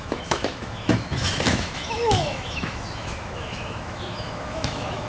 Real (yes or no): no